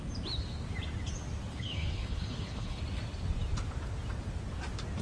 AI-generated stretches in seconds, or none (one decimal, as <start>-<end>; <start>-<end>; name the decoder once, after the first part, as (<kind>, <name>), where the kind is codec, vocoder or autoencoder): 1.5-2.8 (codec, HILCodec)